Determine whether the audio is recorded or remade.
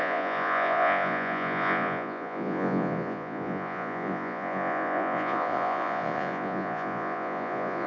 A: remade